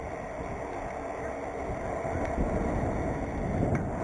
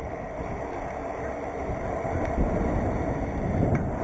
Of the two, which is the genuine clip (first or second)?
first